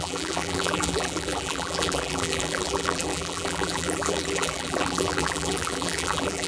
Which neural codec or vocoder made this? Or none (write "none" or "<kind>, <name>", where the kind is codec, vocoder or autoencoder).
vocoder, BigVGAN v2